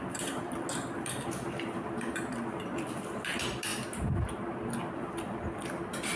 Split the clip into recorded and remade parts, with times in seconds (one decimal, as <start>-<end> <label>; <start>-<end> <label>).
0.0-6.2 recorded